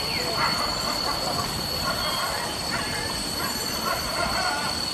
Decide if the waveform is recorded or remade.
recorded